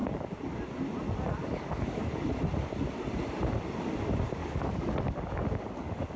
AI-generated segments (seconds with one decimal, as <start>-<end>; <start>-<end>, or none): 0.0-0.6; 1.4-2.0; 4.4-6.2